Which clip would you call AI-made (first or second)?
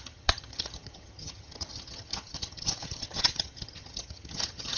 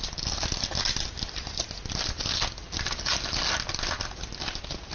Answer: first